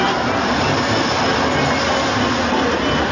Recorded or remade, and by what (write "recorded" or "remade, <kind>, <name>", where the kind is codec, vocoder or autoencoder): recorded